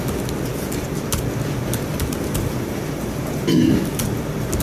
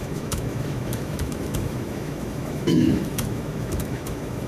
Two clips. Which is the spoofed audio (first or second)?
second